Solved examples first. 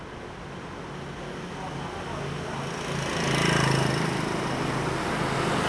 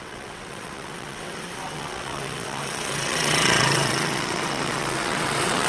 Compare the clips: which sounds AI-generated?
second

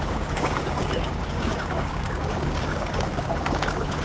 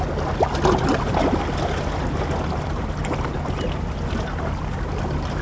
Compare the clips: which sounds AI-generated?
first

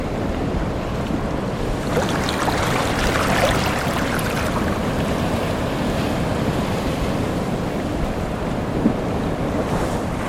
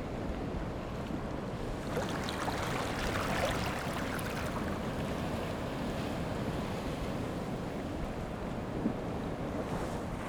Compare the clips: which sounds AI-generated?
first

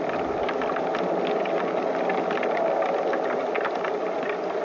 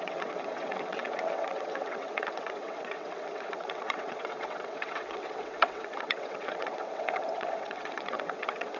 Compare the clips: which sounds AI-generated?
second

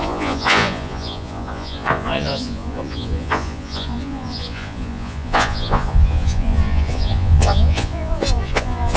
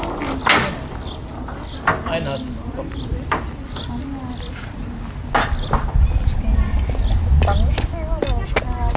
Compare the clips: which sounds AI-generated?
first